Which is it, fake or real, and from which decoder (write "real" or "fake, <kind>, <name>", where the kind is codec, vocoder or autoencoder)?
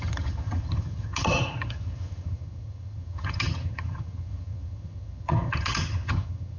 fake, vocoder, HiFi-GAN